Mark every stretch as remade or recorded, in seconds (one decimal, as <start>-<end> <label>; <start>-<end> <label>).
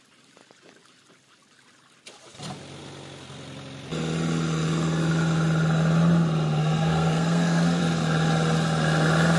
0.0-6.6 recorded; 6.6-7.8 remade; 7.8-9.4 recorded